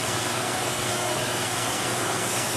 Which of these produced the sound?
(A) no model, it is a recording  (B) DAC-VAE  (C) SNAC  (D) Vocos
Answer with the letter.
C